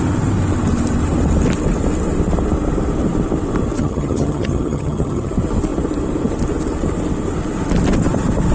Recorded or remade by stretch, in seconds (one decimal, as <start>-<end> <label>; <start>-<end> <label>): 0.0-3.8 recorded; 3.8-5.3 remade; 5.3-8.5 recorded